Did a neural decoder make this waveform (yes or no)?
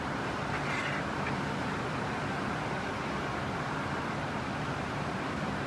yes